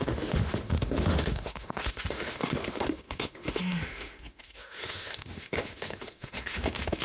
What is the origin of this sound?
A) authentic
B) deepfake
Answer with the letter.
B